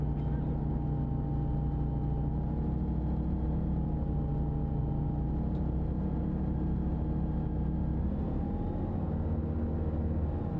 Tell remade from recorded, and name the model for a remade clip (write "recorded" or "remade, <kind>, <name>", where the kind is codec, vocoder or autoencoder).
recorded